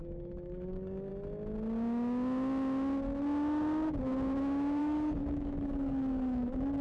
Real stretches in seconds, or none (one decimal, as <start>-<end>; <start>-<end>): 1.1-4.8

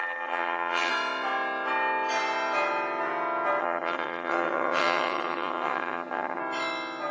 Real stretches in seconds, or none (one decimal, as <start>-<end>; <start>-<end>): 0.9-3.6; 6.4-7.1